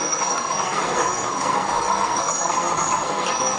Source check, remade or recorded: remade